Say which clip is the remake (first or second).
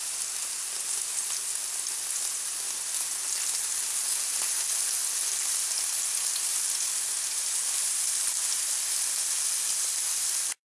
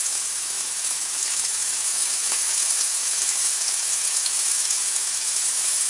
second